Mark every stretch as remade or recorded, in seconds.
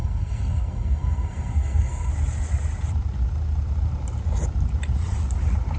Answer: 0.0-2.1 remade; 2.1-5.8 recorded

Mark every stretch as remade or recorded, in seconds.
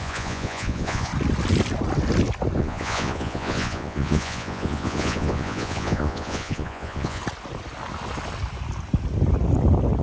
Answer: 0.0-1.1 remade; 1.1-2.6 recorded; 2.6-7.2 remade; 7.2-10.0 recorded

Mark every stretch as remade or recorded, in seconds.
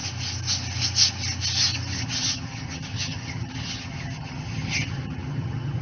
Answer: 0.0-2.0 recorded; 2.0-5.8 remade